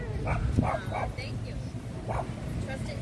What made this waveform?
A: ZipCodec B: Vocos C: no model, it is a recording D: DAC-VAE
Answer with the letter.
C